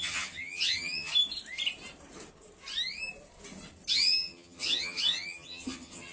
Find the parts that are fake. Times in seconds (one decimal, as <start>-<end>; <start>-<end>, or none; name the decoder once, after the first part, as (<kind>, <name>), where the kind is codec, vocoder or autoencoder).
0.0-1.1 (vocoder, HiFi-GAN); 3.9-6.1